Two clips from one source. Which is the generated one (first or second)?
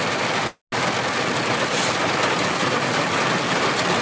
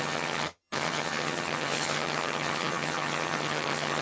second